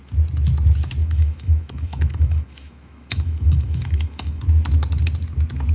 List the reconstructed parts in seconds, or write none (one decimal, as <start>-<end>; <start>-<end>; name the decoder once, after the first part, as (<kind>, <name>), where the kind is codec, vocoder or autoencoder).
1.0-4.4 (autoencoder, DAC-VAE)